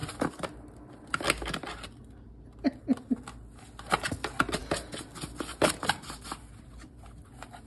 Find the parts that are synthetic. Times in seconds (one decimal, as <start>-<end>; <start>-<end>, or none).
none